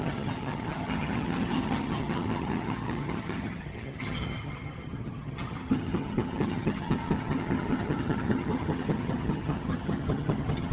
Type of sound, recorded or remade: remade